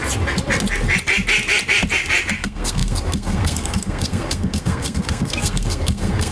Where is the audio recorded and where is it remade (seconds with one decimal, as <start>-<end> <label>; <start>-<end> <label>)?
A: 0.0-2.3 recorded; 2.3-6.3 remade